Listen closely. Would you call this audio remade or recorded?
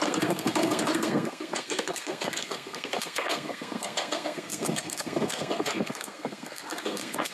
remade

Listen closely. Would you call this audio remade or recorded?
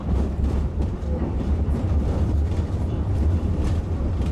remade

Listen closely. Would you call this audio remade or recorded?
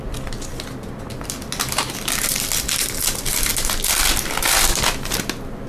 recorded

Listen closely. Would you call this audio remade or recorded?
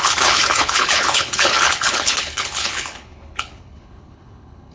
remade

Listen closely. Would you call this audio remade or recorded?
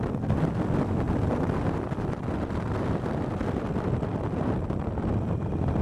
remade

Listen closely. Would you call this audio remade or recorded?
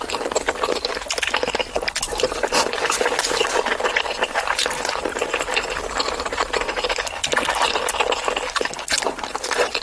recorded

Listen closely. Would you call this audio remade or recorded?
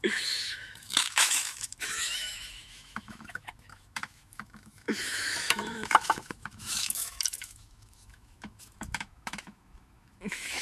remade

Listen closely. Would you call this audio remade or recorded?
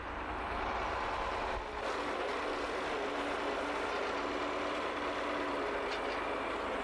recorded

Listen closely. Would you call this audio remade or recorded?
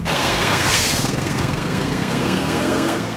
remade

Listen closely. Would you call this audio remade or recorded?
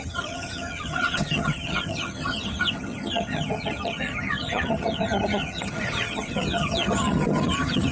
remade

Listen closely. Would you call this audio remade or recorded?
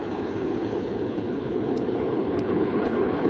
remade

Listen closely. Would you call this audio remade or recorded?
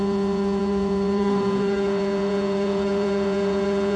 remade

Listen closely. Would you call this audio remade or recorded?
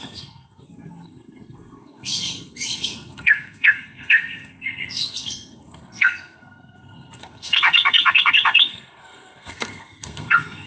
remade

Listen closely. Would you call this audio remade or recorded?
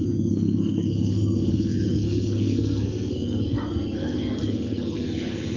remade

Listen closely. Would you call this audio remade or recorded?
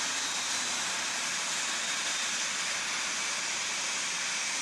recorded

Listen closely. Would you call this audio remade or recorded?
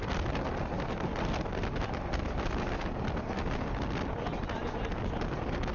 recorded